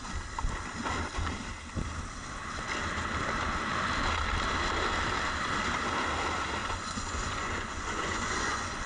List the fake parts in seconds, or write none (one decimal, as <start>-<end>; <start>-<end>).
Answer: 6.6-8.9